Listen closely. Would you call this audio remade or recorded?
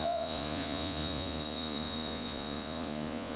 remade